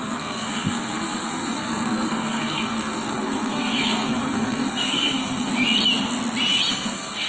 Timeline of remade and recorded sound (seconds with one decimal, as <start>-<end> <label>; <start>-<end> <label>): 0.0-5.5 remade; 5.5-6.7 recorded; 6.7-7.3 remade